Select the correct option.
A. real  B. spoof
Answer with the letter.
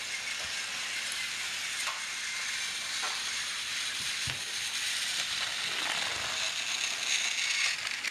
A